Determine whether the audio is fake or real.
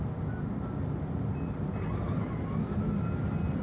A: real